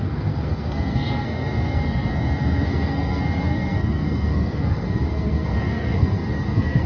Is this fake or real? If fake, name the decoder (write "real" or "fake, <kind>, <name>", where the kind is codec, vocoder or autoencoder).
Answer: fake, codec, SNAC